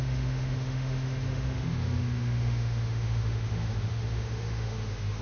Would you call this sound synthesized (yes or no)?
yes